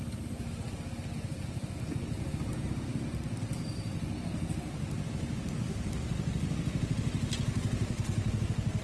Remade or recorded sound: recorded